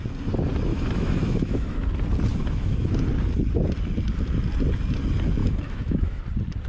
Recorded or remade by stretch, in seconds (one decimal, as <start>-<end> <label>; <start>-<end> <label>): 0.0-0.7 recorded; 0.7-1.9 remade; 1.9-2.3 recorded; 2.3-2.9 remade; 2.9-5.4 recorded; 5.4-6.2 remade; 6.2-6.7 recorded